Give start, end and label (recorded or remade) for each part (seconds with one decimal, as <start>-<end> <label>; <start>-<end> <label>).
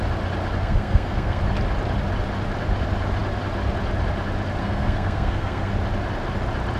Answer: 0.0-0.6 recorded; 0.6-1.4 remade; 1.4-4.6 recorded; 4.6-5.7 remade; 5.7-6.8 recorded